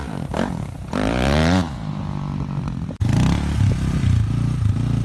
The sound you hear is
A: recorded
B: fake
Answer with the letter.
A